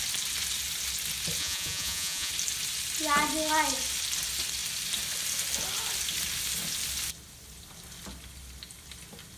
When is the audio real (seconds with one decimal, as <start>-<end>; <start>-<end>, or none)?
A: 0.0-1.4; 2.3-9.4